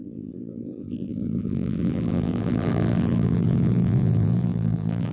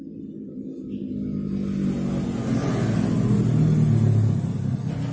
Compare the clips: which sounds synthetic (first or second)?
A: first